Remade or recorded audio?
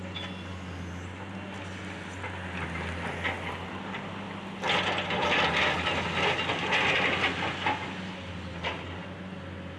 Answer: recorded